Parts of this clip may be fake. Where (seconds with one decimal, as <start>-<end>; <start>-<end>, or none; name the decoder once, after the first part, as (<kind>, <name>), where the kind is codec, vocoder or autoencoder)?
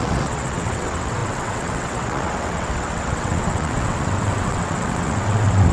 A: 0.0-5.7 (vocoder, WaveNeXt)